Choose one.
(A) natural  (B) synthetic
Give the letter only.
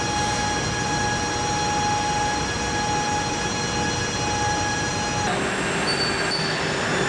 A